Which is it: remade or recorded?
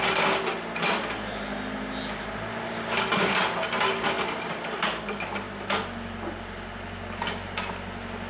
recorded